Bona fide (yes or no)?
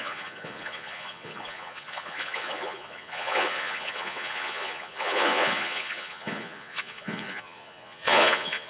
no